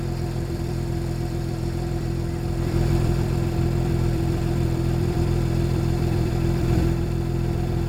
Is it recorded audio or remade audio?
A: remade